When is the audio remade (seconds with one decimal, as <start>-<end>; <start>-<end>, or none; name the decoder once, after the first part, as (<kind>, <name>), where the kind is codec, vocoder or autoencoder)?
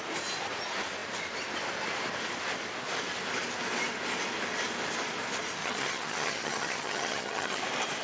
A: 5.6-7.6 (vocoder, HiFi-GAN)